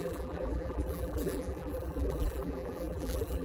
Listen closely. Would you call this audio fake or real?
fake